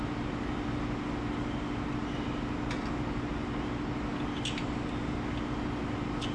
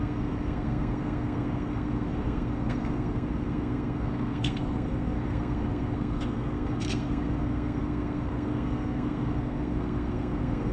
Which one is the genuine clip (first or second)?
first